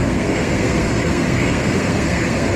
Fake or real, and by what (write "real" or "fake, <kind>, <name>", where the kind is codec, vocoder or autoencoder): fake, codec, SNAC